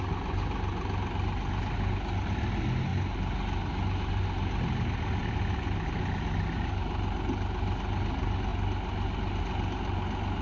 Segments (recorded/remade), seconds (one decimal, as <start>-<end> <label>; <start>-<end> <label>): 0.0-10.4 recorded

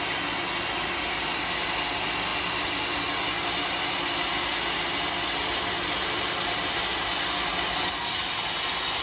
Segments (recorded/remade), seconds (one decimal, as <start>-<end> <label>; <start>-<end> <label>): 0.0-9.0 recorded

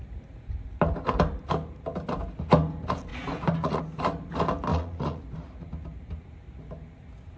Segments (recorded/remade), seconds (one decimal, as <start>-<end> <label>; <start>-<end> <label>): 0.0-3.1 recorded; 3.1-3.8 remade; 3.8-4.7 recorded; 4.7-5.4 remade; 5.4-7.4 recorded

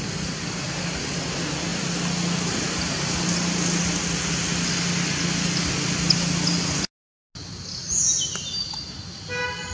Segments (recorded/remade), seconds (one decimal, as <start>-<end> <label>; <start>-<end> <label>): 0.0-9.7 recorded

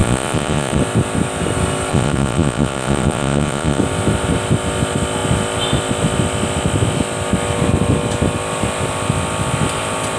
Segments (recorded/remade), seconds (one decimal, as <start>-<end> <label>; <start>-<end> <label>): 0.0-0.8 remade; 0.8-1.9 recorded; 1.9-3.8 remade; 3.8-10.2 recorded

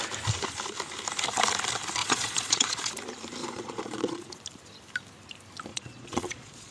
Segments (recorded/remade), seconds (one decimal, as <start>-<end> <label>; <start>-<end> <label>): 0.0-2.0 recorded; 2.0-2.9 remade; 2.9-3.4 recorded; 3.4-4.3 remade; 4.3-5.7 recorded; 5.7-6.7 remade

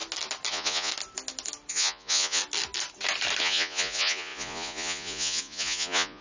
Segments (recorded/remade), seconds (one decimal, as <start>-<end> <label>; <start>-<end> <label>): 0.0-0.5 recorded; 0.5-0.9 remade; 0.9-1.7 recorded; 1.7-2.4 remade; 2.4-3.4 recorded; 3.4-6.2 remade

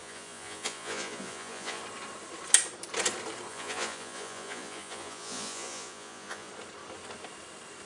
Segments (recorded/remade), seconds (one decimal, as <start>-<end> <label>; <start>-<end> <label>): 0.0-1.8 remade; 1.8-3.5 recorded; 3.5-6.5 remade; 6.5-7.9 recorded